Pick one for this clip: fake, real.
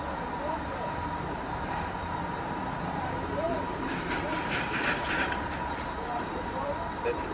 fake